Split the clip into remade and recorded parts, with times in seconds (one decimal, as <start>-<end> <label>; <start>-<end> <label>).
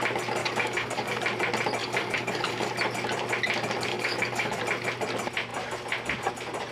0.0-0.4 recorded; 0.4-1.2 remade; 1.2-1.8 recorded; 1.8-2.7 remade; 2.7-3.9 recorded; 3.9-4.6 remade; 4.6-6.7 recorded